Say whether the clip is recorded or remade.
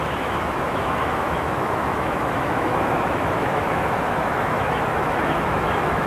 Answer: remade